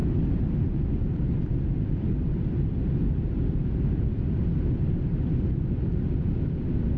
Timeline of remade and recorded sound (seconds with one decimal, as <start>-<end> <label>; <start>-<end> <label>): 0.0-7.0 recorded